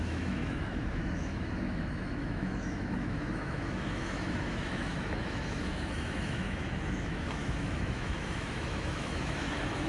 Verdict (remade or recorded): remade